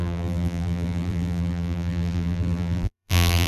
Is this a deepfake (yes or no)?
yes